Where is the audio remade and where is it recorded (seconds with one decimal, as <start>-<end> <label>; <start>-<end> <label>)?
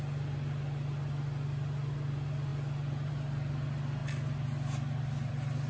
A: 0.0-5.7 recorded